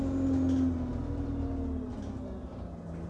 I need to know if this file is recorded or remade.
recorded